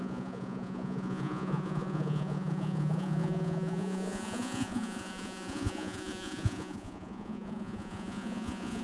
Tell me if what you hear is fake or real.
fake